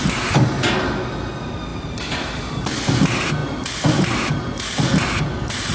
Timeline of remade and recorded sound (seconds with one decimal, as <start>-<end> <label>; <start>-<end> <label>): 0.0-1.7 recorded; 1.7-2.4 remade; 2.4-3.4 recorded; 3.4-5.0 remade; 5.0-5.7 recorded